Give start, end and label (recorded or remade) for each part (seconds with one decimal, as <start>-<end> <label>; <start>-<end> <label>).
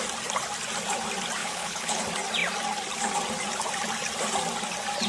0.0-1.4 recorded; 1.4-2.0 remade; 2.0-5.1 recorded